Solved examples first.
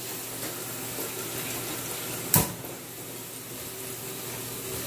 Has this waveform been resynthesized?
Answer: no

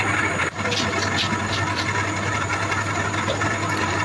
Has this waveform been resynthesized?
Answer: no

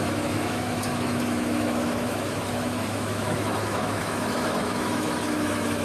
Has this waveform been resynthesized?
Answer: yes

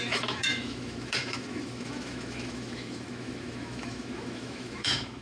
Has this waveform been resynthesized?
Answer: yes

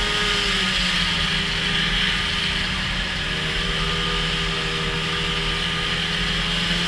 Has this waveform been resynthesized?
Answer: no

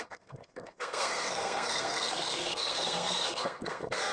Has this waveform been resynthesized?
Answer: yes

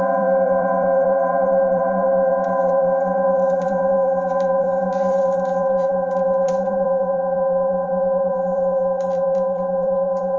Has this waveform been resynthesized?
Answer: yes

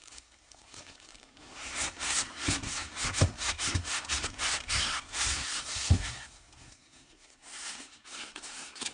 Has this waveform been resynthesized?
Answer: yes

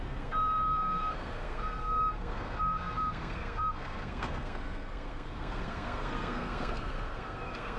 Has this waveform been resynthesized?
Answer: yes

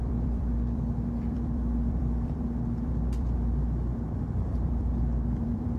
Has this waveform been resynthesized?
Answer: yes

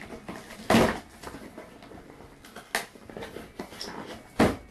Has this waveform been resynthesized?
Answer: no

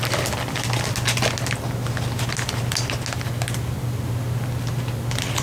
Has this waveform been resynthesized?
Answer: no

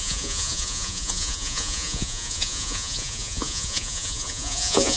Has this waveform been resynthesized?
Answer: yes